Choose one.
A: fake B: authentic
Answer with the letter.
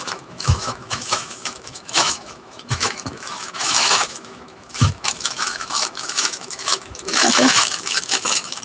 A